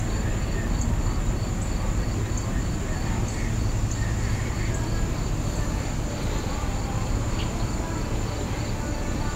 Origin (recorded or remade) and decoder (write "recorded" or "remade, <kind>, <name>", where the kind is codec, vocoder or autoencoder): recorded